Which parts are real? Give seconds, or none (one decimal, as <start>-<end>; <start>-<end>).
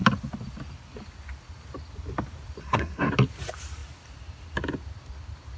0.0-2.6; 3.1-5.6